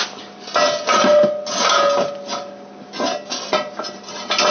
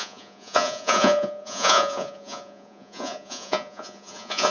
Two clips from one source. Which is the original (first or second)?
first